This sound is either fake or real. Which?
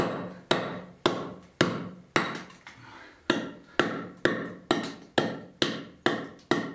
real